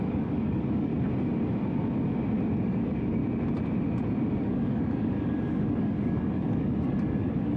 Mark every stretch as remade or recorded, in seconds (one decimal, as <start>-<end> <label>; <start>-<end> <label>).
0.0-0.9 remade; 0.9-2.6 recorded; 2.6-3.2 remade; 3.2-4.4 recorded; 4.4-7.6 remade